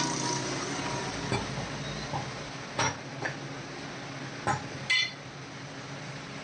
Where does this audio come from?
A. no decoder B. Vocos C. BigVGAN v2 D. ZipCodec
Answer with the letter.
A